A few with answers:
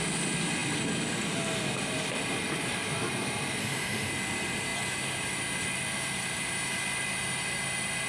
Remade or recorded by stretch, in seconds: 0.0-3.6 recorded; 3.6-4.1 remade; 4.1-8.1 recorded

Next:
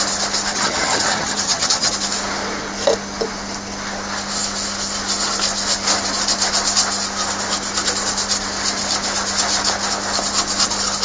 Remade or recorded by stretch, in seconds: 0.0-0.5 recorded; 0.5-1.9 remade; 1.9-11.0 recorded

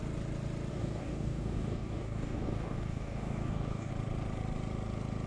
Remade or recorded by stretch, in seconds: 0.0-0.7 recorded; 0.7-3.9 remade; 3.9-5.3 recorded

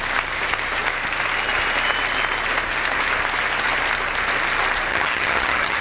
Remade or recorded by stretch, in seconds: 0.0-4.9 recorded; 4.9-5.8 remade